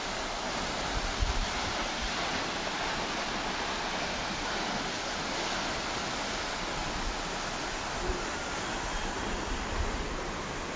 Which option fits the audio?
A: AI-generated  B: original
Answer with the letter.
B